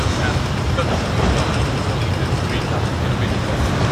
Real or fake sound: real